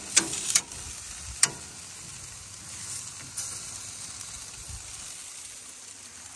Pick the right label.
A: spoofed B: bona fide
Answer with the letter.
B